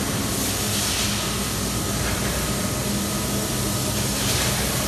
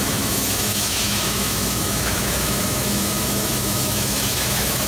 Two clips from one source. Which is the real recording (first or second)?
first